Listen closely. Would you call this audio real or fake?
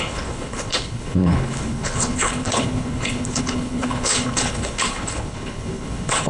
fake